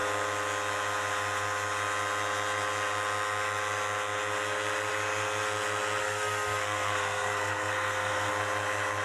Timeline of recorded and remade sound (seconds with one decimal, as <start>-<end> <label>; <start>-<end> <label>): 0.0-6.0 recorded; 6.0-8.3 remade; 8.3-9.0 recorded